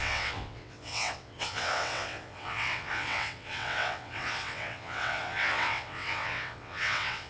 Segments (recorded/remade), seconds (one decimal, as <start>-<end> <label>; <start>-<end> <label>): 0.0-7.3 remade